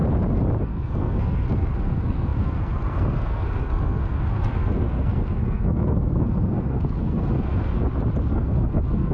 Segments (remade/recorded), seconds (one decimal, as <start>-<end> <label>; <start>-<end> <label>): 0.0-0.6 recorded; 0.6-7.7 remade; 7.7-8.3 recorded; 8.3-9.1 remade